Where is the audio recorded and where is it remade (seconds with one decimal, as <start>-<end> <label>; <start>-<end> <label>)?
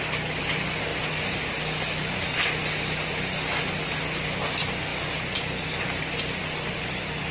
0.0-7.3 recorded